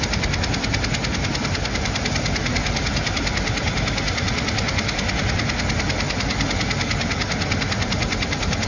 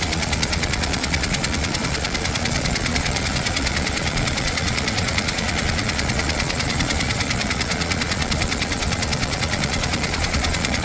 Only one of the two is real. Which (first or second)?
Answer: first